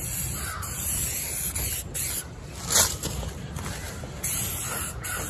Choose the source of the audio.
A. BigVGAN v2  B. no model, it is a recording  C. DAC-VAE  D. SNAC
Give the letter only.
B